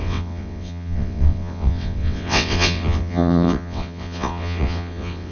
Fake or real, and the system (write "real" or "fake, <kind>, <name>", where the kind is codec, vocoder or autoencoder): fake, vocoder, WaveNeXt